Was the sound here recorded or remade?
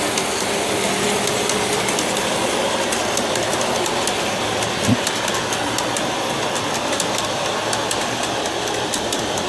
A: recorded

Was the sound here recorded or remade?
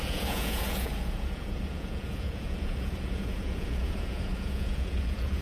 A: remade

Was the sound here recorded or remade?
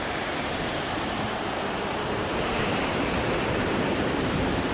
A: remade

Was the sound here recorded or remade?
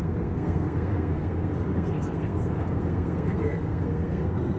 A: remade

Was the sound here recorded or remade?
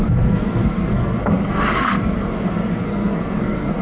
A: remade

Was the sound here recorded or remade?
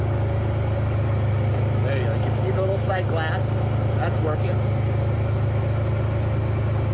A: recorded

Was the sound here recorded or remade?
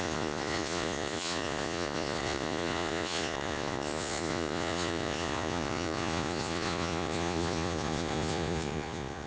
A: remade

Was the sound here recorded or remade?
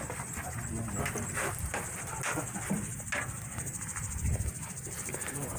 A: recorded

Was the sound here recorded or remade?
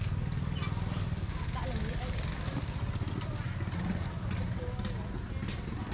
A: recorded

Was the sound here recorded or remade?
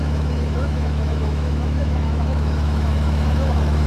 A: remade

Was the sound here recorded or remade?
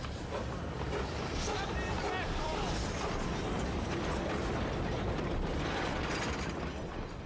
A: remade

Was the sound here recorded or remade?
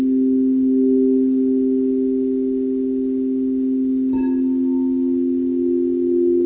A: recorded